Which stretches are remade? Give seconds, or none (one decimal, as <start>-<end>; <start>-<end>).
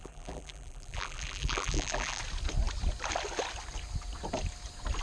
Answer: 0.0-2.2